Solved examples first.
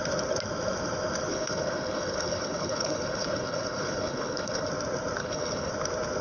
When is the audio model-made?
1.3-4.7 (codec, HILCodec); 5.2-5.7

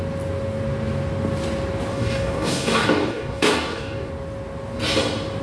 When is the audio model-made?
1.9-4.1 (codec, DAC)

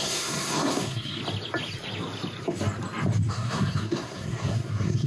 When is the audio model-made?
0.0-1.2 (codec, SNAC); 3.3-5.1

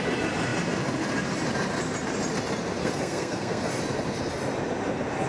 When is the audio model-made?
2.8-3.7 (codec, SNAC)

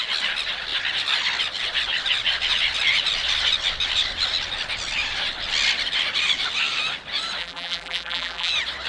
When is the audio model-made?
7.4-8.5 (vocoder, BigVGAN v2)

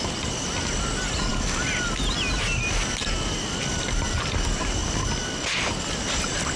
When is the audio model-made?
none

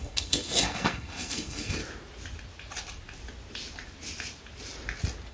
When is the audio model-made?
0.0-1.8 (codec, SNAC)

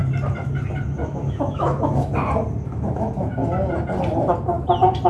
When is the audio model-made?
1.0-2.1 (autoencoder, DAC-VAE); 2.7-3.4